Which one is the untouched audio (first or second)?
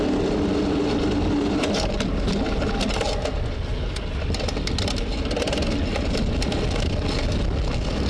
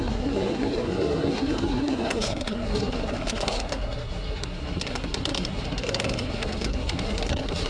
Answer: first